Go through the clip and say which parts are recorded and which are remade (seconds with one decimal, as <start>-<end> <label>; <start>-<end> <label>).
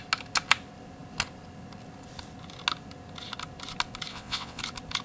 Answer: 0.0-4.1 recorded; 4.1-4.6 remade; 4.6-5.0 recorded